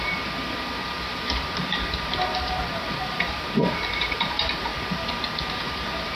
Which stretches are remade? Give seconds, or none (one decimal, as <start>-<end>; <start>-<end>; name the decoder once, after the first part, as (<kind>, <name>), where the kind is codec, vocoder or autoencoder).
0.0-4.7 (vocoder, BigVGAN v2); 5.5-6.1